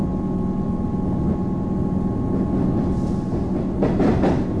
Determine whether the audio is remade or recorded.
recorded